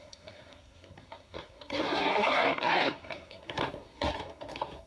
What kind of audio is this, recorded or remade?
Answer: remade